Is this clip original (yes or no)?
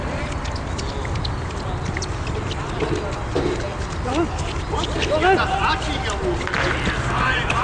yes